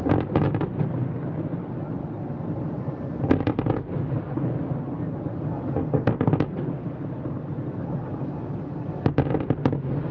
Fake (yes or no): no